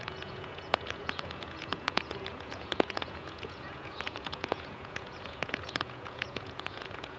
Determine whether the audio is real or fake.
fake